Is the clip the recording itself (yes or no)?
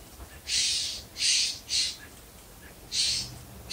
yes